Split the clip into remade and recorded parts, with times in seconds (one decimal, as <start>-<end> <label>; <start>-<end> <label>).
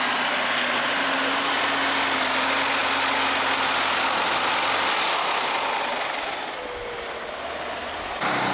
0.0-8.5 recorded